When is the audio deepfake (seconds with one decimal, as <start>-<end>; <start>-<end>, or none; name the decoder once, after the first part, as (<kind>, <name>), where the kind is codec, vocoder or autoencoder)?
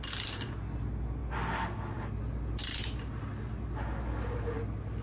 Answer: none